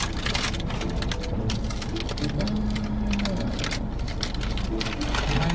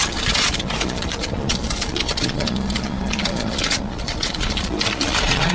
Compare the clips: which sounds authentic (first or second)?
first